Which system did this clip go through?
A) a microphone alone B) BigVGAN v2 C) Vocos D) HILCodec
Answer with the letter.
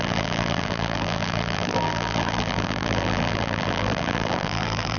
B